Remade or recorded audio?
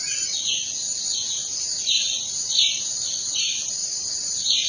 recorded